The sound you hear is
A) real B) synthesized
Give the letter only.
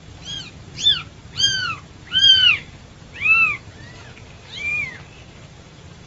B